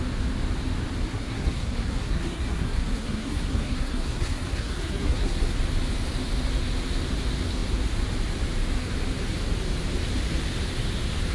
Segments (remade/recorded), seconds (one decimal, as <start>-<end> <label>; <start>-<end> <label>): 0.0-1.1 recorded; 1.1-5.6 remade; 5.6-11.3 recorded